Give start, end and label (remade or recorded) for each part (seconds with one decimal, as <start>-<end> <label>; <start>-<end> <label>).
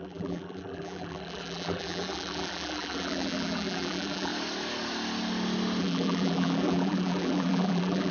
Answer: 0.0-4.3 remade; 4.3-5.8 recorded; 5.8-8.1 remade